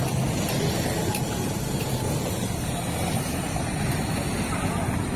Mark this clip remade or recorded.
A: recorded